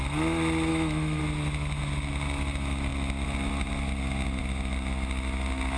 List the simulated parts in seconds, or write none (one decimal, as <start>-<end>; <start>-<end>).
0.7-1.2